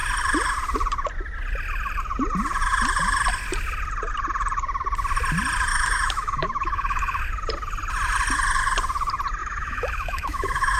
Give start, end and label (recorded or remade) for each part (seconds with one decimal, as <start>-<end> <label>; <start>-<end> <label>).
0.0-5.7 recorded; 5.7-7.2 remade; 7.2-9.4 recorded; 9.4-10.8 remade